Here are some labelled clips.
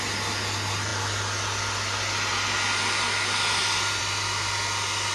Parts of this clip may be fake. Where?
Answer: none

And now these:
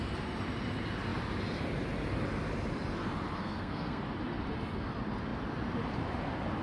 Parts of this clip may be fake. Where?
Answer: 3.4-4.0 (codec, SNAC)

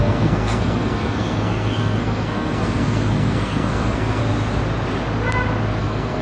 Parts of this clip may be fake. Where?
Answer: 0.0-4.2 (codec, SNAC); 5.8-6.2

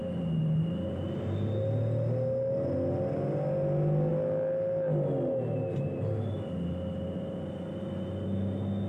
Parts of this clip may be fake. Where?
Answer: none

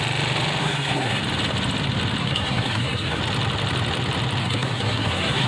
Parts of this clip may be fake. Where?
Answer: 0.6-1.2 (codec, SNAC); 2.2-3.2; 4.4-5.5

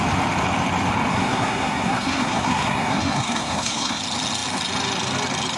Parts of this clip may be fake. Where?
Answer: 1.1-4.0 (codec, SNAC)

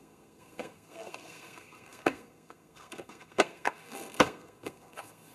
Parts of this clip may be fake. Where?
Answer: 0.0-5.3 (codec, SNAC)

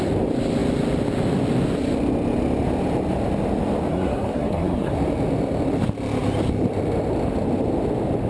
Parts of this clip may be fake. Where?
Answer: 3.9-4.9 (codec, SNAC)